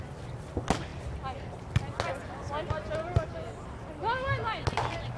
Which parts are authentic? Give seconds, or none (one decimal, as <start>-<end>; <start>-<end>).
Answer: 0.0-5.2